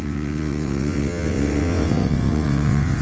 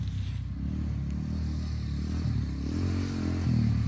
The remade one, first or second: first